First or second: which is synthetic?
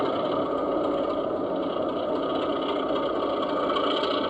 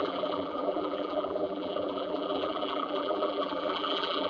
second